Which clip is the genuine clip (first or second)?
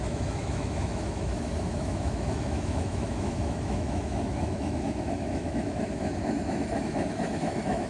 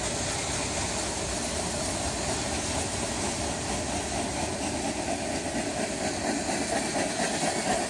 second